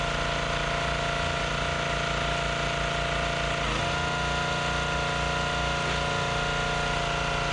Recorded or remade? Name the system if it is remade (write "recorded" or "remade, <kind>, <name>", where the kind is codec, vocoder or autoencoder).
recorded